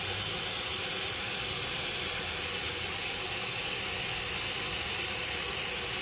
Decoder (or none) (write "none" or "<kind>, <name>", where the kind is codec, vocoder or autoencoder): none